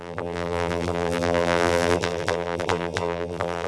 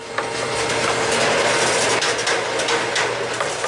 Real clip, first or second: second